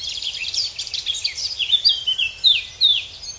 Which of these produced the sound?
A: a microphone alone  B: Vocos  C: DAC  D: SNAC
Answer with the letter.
A